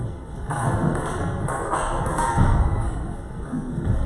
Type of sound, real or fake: fake